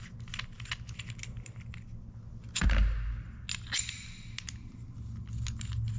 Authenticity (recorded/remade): recorded